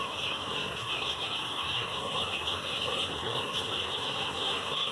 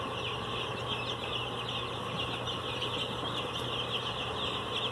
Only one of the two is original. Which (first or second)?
second